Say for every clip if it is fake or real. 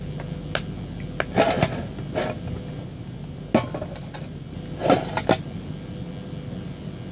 real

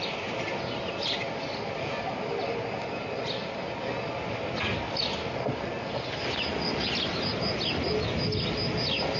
real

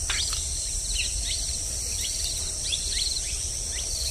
real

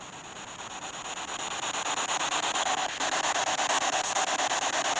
real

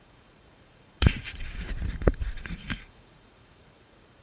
fake